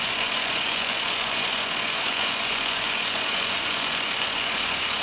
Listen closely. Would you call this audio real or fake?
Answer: fake